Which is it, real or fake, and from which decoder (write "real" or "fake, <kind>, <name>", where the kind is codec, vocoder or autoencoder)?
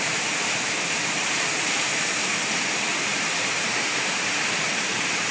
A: fake, vocoder, BigVGAN v2